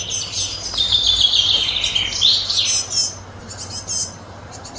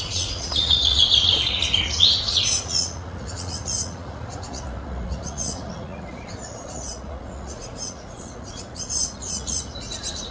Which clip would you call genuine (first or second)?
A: first